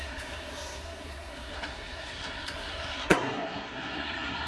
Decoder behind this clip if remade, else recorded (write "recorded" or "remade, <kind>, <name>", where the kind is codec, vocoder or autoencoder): remade, codec, SNAC